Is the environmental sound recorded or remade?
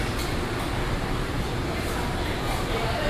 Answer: recorded